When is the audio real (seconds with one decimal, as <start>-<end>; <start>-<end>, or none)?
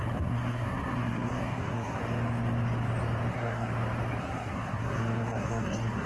2.0-3.3; 3.7-4.2